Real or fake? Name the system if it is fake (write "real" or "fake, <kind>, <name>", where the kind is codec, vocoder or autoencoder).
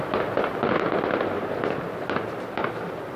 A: real